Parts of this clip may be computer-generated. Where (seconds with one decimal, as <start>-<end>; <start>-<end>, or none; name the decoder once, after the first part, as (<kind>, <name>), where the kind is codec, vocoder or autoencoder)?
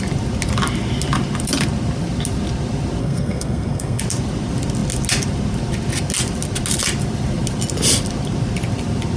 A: 3.0-4.0 (codec, SNAC)